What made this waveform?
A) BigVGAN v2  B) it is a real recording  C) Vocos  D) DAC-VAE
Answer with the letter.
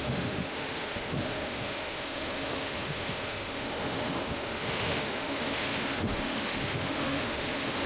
D